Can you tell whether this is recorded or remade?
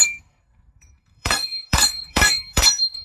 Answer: remade